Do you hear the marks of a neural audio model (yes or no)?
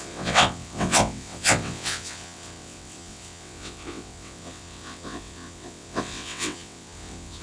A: yes